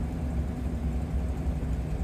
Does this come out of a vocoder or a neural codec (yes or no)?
yes